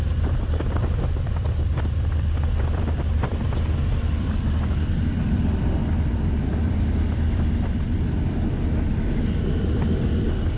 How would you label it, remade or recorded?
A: remade